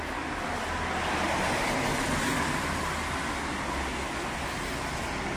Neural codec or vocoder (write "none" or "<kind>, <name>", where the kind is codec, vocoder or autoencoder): none